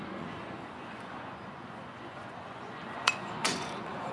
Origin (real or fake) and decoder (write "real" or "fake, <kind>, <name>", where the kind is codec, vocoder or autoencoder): fake, vocoder, Vocos